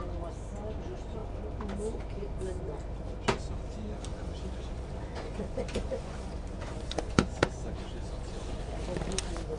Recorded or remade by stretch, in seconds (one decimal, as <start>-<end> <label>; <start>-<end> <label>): 0.0-4.1 recorded; 4.1-8.7 remade; 8.7-9.6 recorded